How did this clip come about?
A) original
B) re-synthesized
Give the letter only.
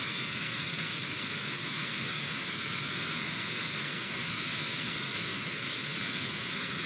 B